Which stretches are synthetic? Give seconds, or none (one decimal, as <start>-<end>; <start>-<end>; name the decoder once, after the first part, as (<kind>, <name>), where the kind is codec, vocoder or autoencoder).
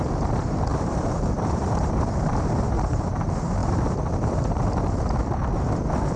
0.7-3.1 (vocoder, BigVGAN v2); 3.6-4.7